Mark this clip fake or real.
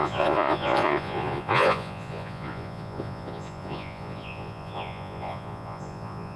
fake